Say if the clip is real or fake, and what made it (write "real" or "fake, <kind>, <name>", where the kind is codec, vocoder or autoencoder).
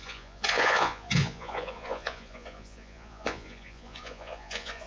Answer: fake, vocoder, Vocos